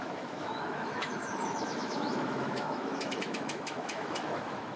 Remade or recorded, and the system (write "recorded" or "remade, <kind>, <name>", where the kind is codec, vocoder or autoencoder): remade, autoencoder, DAC-VAE